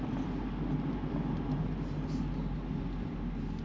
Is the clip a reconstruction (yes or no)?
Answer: no